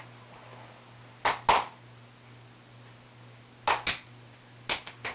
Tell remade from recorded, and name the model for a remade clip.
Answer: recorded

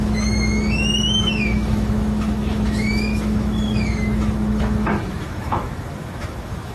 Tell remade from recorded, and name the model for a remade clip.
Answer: remade, autoencoder, DAC-VAE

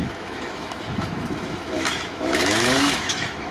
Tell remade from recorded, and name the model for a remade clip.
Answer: remade, autoencoder, DAC-VAE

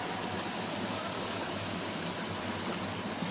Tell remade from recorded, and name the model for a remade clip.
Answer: recorded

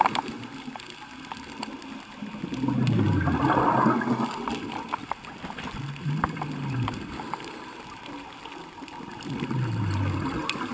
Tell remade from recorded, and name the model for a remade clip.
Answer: recorded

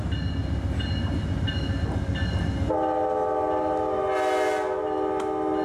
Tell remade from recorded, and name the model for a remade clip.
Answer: recorded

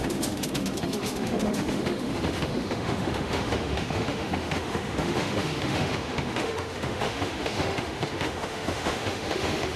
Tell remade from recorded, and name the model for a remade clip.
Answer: remade, autoencoder, DAC-VAE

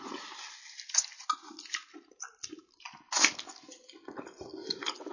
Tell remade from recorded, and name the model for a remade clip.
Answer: recorded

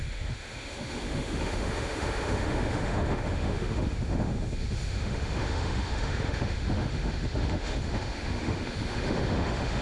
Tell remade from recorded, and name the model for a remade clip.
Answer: remade, autoencoder, DAC-VAE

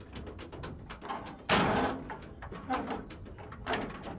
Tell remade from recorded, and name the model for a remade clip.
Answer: recorded